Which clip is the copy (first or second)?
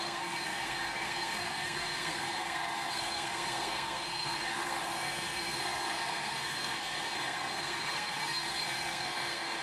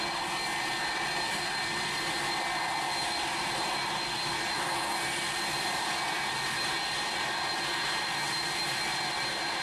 first